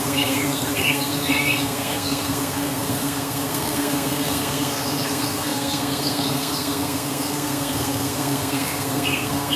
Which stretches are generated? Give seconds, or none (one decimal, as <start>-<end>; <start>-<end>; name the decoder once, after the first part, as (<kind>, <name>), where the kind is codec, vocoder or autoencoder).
0.0-9.6 (codec, SNAC)